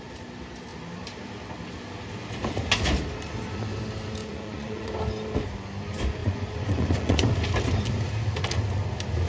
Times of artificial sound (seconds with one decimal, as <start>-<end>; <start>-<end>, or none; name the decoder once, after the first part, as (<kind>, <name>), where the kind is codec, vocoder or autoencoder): 4.2-4.9 (vocoder, Vocos); 6.2-7.2